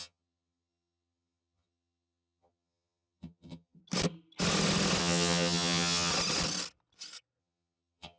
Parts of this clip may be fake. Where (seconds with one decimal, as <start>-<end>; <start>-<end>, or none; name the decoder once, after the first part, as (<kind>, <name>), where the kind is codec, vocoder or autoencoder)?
0.0-3.8 (vocoder, HiFi-GAN); 5.0-6.1; 7.4-8.2